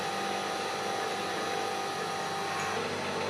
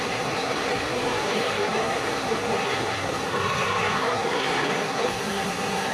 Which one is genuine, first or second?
first